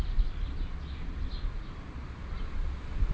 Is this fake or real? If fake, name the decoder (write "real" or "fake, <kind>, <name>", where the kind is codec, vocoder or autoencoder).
real